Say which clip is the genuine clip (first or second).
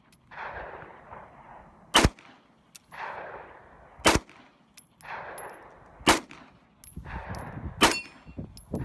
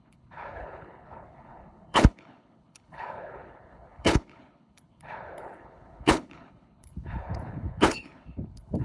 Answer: first